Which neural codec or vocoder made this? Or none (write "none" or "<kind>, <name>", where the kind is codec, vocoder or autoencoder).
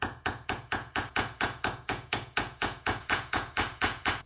vocoder, Vocos